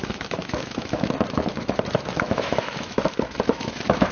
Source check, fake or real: fake